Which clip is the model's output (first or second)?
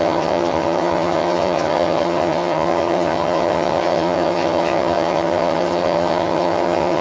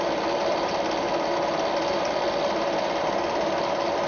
first